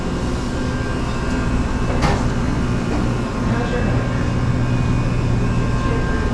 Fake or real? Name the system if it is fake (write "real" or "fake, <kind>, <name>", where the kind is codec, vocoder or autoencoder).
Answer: real